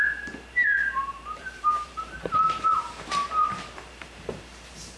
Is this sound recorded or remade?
remade